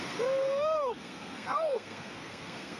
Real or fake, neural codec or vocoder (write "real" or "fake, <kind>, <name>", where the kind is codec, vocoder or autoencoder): fake, codec, SNAC